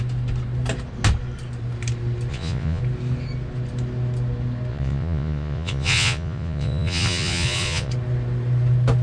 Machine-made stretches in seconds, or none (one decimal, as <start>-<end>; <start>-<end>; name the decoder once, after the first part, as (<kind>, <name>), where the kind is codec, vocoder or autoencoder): 2.3-2.8 (vocoder, Vocos); 4.7-7.9